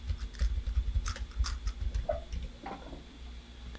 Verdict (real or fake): real